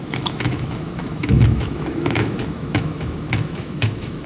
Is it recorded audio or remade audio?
remade